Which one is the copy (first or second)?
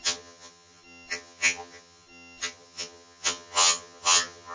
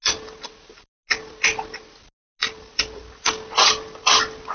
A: first